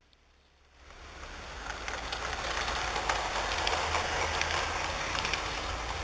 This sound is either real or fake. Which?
real